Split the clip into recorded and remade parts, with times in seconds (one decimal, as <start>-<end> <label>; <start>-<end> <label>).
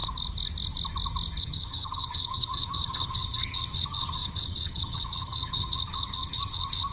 0.0-1.4 recorded; 1.4-6.9 remade